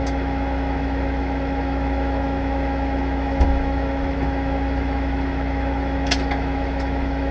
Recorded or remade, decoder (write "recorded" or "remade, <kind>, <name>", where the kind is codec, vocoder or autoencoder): remade, autoencoder, DAC-VAE